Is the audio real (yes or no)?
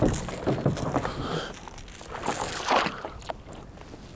yes